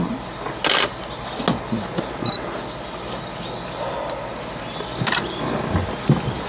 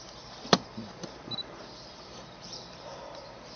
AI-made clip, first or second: second